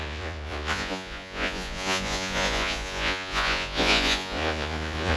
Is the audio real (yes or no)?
no